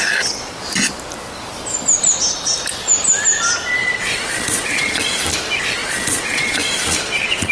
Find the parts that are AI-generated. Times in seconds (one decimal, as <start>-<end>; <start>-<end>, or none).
3.8-5.2; 5.8-7.5